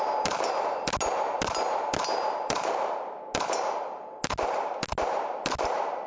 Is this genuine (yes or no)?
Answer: yes